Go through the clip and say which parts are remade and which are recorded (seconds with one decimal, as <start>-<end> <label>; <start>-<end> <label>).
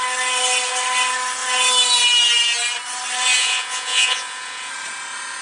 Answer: 0.0-3.4 recorded; 3.4-4.7 remade; 4.7-5.4 recorded